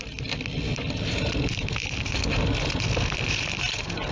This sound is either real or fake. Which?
real